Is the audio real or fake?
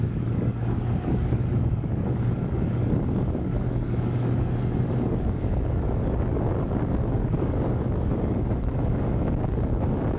fake